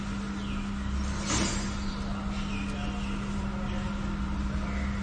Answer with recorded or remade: recorded